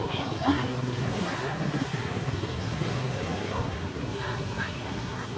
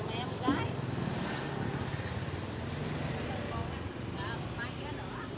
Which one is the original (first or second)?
second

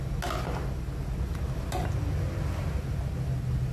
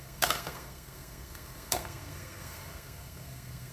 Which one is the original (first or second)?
first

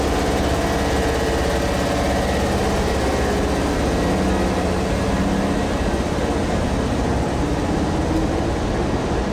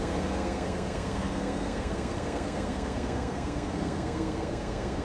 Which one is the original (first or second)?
first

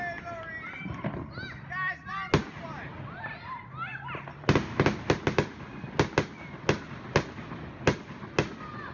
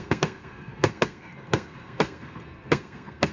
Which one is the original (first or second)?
first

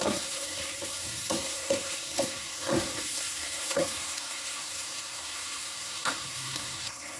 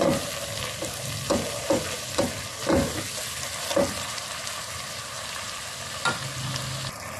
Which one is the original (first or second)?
second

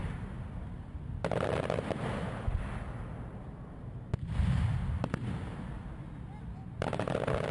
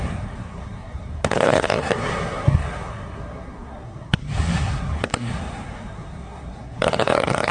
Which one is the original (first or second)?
first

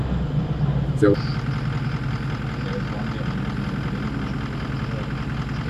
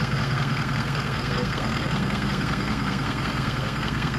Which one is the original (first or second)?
first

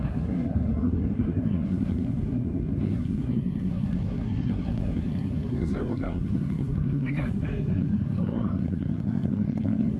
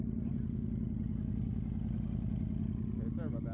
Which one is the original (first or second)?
second